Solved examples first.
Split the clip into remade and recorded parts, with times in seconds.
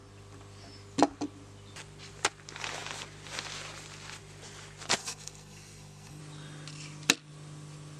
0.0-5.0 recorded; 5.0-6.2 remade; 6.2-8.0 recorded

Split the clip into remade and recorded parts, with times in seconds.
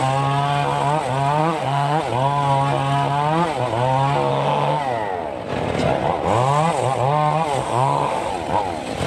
0.0-1.4 recorded; 1.4-2.0 remade; 2.0-4.3 recorded; 4.3-4.8 remade; 4.8-7.6 recorded; 7.6-8.3 remade; 8.3-9.1 recorded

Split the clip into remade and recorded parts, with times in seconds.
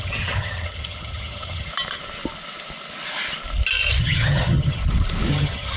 0.0-1.7 remade; 1.7-4.0 recorded; 4.0-4.8 remade; 4.8-5.3 recorded; 5.3-5.8 remade